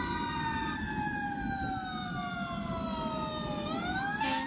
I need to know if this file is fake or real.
real